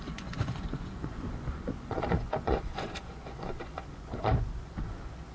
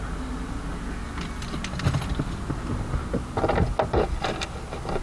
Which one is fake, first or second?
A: first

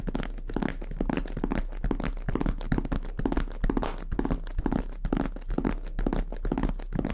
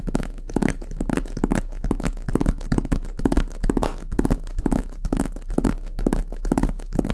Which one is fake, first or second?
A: second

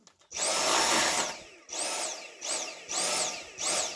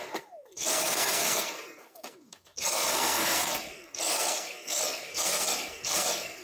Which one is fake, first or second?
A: second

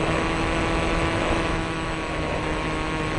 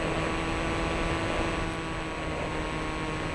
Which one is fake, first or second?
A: first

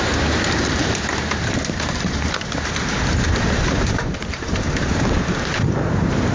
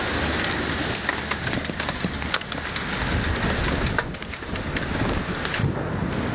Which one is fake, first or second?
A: first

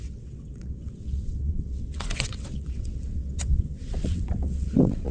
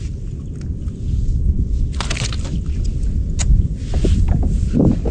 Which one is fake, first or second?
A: first